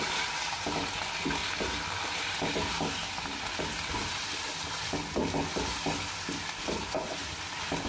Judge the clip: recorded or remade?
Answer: recorded